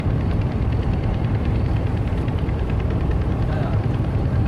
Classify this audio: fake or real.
fake